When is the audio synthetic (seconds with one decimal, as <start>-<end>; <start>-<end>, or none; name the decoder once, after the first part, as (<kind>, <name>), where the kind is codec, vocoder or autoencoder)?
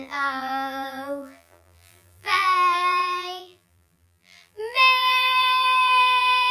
0.0-6.5 (vocoder, BigVGAN v2)